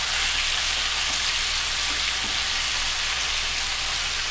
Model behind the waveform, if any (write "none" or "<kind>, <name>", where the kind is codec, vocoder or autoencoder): none